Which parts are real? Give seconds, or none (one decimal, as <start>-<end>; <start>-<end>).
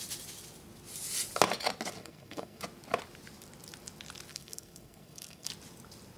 0.0-2.0; 2.6-4.3; 5.5-6.2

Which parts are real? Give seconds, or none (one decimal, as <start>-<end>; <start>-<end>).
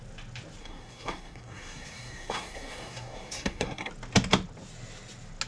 0.0-0.6; 3.9-5.5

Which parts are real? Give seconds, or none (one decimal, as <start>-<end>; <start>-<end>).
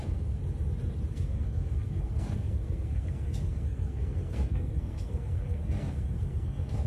0.4-1.1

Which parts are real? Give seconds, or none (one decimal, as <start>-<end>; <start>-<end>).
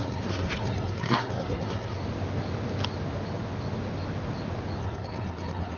2.0-4.8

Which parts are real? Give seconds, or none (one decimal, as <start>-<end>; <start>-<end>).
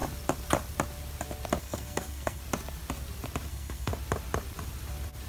0.0-1.6; 2.4-3.5; 3.9-5.3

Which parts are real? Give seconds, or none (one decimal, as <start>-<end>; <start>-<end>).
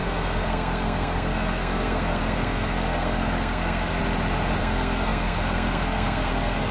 4.0-4.6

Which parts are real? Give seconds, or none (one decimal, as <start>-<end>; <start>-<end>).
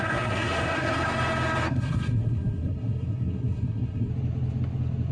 1.1-1.7; 4.1-5.1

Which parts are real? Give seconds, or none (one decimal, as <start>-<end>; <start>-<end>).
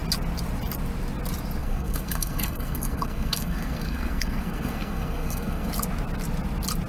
0.0-1.6; 5.7-6.9